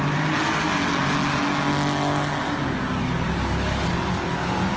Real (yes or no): yes